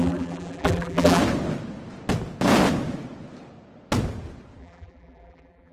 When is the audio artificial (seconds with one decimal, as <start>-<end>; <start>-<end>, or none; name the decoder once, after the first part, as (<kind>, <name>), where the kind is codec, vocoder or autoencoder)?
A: 0.0-1.2 (vocoder, BigVGAN v2); 4.6-5.7